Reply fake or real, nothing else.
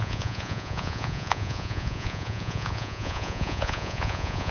fake